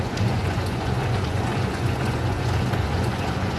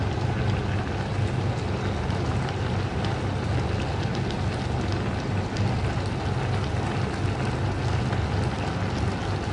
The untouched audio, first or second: second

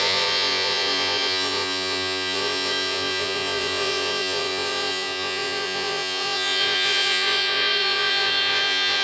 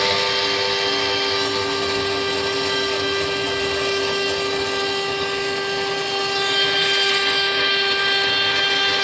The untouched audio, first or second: second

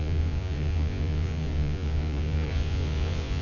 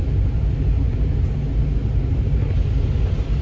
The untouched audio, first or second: second